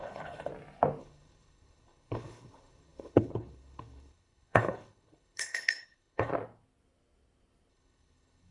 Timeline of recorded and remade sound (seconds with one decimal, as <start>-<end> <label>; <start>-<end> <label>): 0.0-0.5 remade; 0.5-1.0 recorded; 1.0-6.3 remade; 6.3-7.7 recorded; 7.7-8.5 remade